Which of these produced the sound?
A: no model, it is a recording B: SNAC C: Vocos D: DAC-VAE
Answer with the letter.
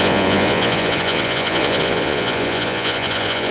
C